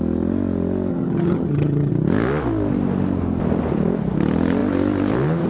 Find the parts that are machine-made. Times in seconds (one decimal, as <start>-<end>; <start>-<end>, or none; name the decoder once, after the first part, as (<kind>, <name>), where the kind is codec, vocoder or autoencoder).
0.9-1.9 (vocoder, HiFi-GAN)